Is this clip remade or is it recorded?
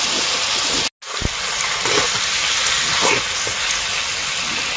recorded